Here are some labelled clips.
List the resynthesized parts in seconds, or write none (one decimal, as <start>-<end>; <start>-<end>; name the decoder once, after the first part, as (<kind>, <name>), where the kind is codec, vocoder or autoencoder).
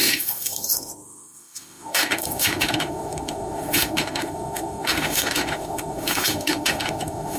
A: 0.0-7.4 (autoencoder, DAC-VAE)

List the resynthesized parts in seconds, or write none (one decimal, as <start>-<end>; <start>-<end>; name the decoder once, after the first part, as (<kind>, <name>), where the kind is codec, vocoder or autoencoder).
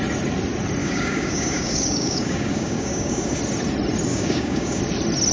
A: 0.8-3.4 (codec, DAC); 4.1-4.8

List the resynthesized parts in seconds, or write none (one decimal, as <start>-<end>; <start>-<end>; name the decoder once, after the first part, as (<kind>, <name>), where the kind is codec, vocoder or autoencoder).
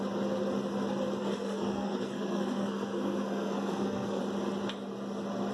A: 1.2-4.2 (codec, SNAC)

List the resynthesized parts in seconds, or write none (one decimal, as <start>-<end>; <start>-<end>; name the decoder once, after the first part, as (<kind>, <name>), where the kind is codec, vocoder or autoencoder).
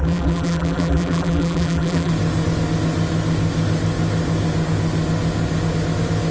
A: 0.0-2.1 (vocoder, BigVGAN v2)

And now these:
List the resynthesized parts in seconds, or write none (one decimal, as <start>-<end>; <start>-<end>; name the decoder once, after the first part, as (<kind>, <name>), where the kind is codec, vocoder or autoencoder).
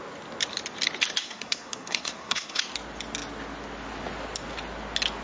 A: 1.2-2.6 (codec, SNAC)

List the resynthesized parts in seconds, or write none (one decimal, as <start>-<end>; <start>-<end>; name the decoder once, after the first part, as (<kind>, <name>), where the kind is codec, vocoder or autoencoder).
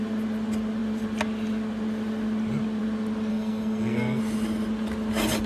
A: 3.3-4.2 (codec, SNAC)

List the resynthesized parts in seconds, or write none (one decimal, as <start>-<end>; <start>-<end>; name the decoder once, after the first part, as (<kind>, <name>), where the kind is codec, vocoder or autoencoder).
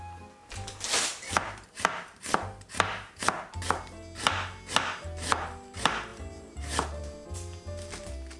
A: 1.1-2.4 (vocoder, BigVGAN v2); 6.1-7.0